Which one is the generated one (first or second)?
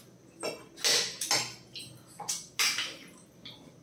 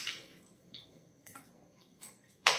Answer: second